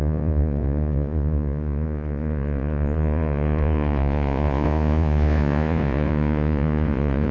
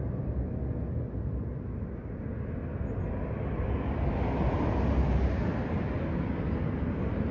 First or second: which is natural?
second